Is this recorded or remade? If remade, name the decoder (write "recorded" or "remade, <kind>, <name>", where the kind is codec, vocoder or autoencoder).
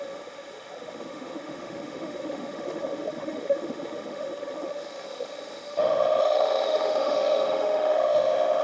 remade, autoencoder, DAC-VAE